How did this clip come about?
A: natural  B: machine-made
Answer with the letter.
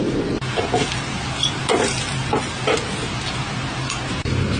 A